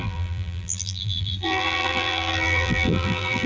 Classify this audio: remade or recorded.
remade